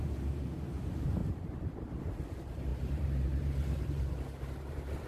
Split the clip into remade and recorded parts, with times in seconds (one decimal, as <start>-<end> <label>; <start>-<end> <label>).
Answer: 0.0-1.2 remade; 1.2-2.0 recorded; 2.0-5.1 remade